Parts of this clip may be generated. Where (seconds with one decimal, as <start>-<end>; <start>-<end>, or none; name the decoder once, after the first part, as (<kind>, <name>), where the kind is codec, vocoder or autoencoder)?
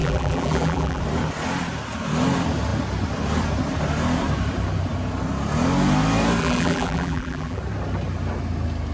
0.0-1.0 (vocoder, BigVGAN v2); 6.4-7.6